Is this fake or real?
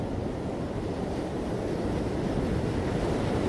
real